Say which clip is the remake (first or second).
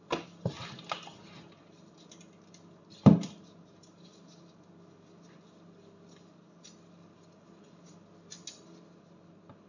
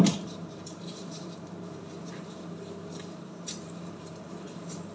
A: second